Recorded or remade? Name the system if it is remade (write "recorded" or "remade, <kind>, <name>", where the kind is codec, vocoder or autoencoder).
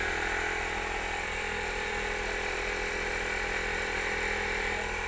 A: recorded